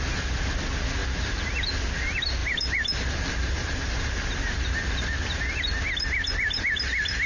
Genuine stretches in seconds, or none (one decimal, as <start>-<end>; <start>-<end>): 0.0-1.0; 1.5-2.4; 5.8-7.3